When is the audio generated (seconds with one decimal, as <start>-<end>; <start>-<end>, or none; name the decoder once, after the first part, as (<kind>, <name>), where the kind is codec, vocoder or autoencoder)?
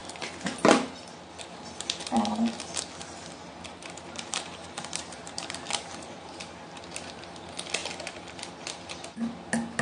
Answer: 3.8-6.4 (vocoder, BigVGAN v2)